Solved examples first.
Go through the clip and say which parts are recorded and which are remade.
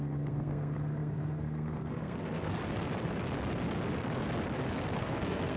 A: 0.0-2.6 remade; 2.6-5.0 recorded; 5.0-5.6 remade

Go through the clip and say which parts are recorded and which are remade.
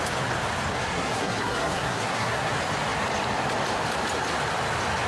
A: 0.0-0.7 recorded; 0.7-2.5 remade; 2.5-5.1 recorded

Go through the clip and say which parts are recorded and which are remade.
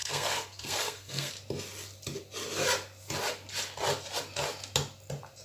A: 0.0-1.3 remade; 1.3-5.4 recorded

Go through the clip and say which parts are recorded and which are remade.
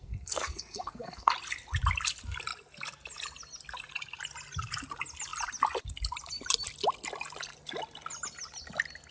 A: 0.0-1.3 remade; 1.3-9.1 recorded